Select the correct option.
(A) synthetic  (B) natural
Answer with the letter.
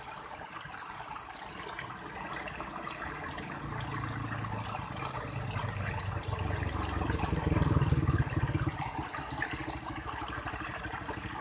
B